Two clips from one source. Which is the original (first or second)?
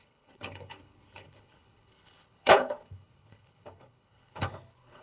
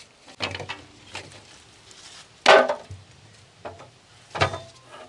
second